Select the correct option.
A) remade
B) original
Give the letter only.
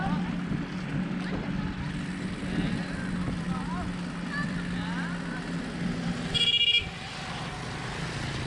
B